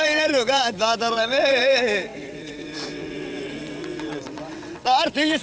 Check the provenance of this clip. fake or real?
fake